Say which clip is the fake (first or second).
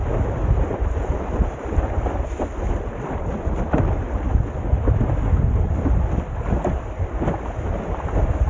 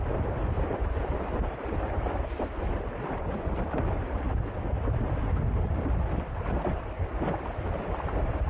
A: second